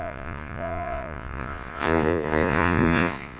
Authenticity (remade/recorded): remade